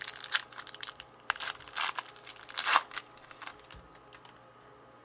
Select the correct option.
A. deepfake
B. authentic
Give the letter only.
B